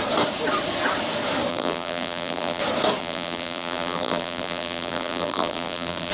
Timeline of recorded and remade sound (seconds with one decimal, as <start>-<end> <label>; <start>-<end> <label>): 0.0-1.5 recorded; 1.5-2.6 remade; 2.6-3.0 recorded; 3.0-6.1 remade